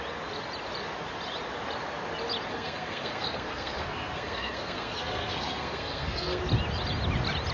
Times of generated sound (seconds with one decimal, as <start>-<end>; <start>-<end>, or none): 2.5-6.4